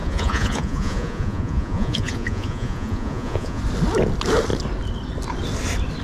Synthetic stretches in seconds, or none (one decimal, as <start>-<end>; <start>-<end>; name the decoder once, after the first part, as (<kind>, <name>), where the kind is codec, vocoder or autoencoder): 0.0-3.6 (vocoder, Vocos)